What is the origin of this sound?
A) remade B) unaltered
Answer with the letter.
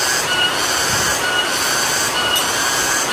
B